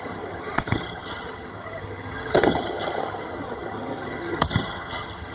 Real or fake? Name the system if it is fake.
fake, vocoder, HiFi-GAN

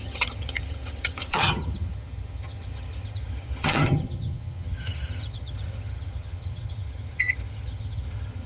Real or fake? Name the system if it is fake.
fake, vocoder, HiFi-GAN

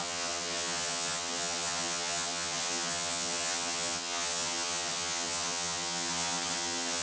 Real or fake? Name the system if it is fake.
fake, vocoder, HiFi-GAN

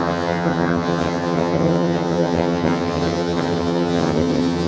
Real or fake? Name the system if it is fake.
fake, vocoder, HiFi-GAN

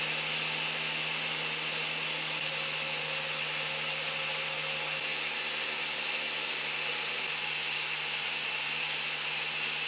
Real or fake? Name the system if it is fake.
real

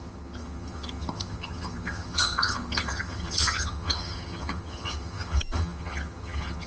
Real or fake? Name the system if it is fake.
fake, vocoder, HiFi-GAN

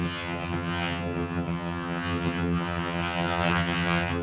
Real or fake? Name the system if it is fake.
fake, vocoder, HiFi-GAN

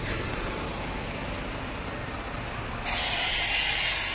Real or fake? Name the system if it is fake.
real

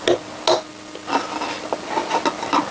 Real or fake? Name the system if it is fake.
real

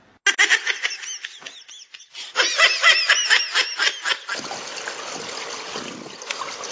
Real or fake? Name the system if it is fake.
real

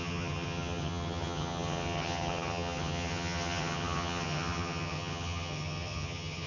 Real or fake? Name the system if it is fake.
fake, vocoder, HiFi-GAN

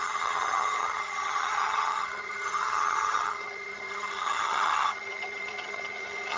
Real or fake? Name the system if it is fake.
fake, vocoder, HiFi-GAN